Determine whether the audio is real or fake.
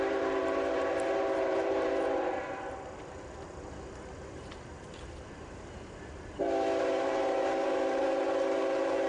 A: fake